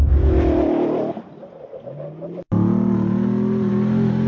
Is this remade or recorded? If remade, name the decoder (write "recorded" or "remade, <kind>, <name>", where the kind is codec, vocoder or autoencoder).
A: recorded